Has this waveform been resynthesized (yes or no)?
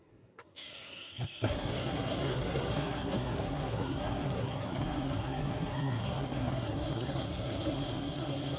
yes